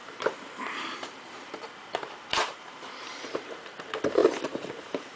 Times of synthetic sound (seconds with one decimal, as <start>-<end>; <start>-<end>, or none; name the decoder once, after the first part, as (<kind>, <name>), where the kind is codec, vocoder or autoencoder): 0.0-5.2 (vocoder, BigVGAN v2)